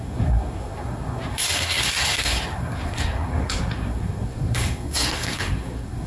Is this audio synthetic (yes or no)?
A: yes